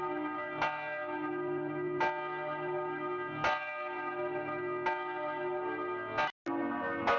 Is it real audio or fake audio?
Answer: real